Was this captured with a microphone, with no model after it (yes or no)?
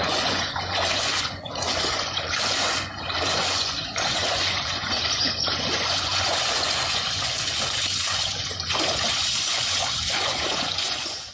no